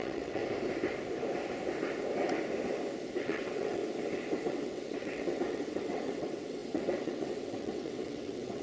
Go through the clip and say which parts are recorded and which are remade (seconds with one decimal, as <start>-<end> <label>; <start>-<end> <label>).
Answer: 0.0-0.4 remade; 0.4-3.2 recorded; 3.2-3.8 remade; 3.8-4.5 recorded; 4.5-8.6 remade